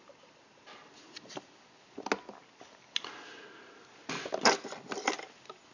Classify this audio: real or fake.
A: real